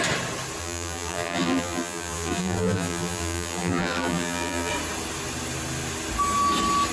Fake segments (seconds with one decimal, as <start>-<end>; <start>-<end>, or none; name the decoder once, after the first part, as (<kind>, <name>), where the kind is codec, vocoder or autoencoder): 0.6-4.7 (vocoder, BigVGAN v2)